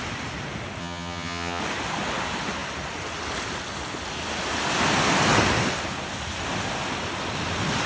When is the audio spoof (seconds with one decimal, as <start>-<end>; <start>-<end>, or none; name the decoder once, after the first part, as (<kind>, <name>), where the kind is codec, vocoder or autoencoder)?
0.8-1.6 (vocoder, HiFi-GAN)